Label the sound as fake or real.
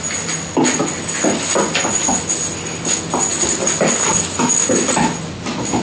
real